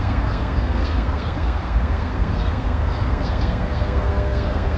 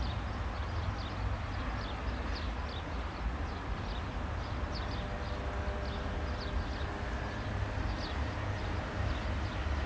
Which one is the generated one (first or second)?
first